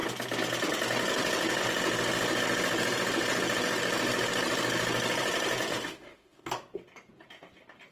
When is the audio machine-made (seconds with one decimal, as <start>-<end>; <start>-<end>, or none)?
5.7-6.5